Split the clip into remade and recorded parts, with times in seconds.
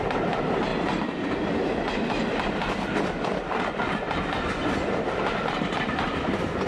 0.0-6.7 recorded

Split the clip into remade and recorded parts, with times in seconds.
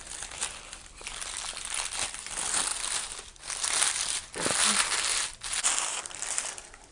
0.0-6.9 recorded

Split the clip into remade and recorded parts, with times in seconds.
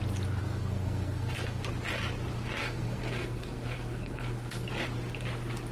0.0-0.4 recorded; 0.4-1.6 remade; 1.6-2.6 recorded; 2.6-4.7 remade; 4.7-5.7 recorded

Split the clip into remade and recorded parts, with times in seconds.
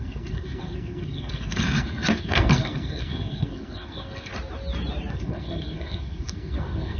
0.0-4.3 remade; 4.3-5.1 recorded; 5.1-7.0 remade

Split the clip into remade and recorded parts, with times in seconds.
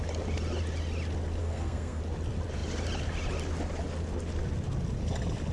0.0-1.4 recorded; 1.4-2.0 remade; 2.0-5.5 recorded